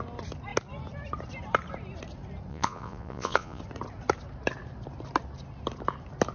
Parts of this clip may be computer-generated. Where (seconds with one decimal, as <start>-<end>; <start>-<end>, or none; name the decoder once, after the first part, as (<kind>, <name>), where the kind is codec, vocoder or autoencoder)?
2.5-3.6 (vocoder, Vocos)